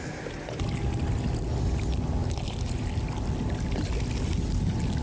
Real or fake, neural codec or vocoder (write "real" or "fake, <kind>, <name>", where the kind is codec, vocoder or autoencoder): real